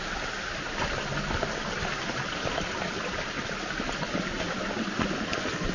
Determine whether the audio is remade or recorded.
recorded